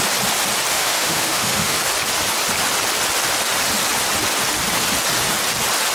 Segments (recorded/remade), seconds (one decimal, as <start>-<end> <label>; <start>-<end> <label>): 0.0-0.7 recorded; 0.7-1.8 remade; 1.8-5.9 recorded